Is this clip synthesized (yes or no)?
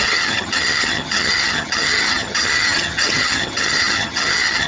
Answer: yes